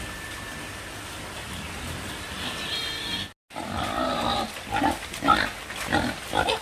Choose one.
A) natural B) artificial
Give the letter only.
A